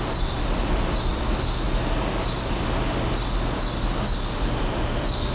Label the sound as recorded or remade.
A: recorded